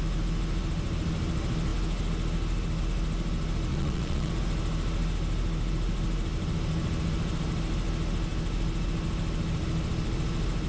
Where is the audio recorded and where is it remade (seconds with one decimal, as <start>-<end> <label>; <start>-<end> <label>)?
0.0-3.7 recorded; 3.7-4.3 remade; 4.3-10.7 recorded